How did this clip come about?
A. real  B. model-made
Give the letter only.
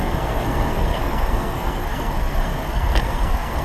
B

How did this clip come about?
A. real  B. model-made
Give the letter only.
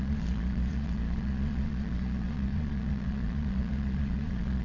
B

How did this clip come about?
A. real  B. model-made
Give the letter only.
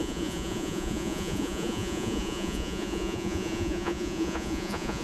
B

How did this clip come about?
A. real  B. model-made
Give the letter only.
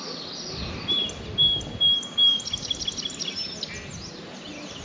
A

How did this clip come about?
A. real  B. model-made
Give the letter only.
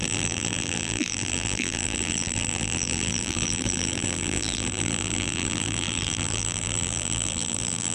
B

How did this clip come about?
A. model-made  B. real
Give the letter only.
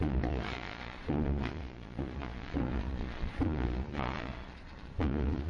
A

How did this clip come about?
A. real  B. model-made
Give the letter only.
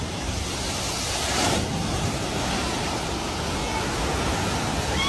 A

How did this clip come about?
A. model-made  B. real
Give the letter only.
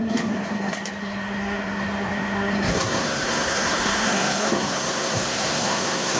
A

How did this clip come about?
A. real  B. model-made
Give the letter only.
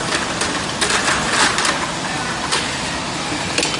A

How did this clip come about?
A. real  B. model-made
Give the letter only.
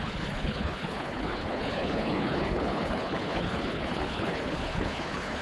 B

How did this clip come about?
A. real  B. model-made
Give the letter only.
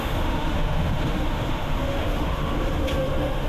B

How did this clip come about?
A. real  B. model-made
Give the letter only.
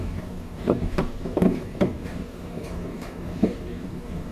B